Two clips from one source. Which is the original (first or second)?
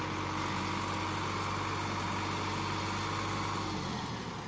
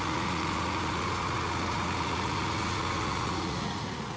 first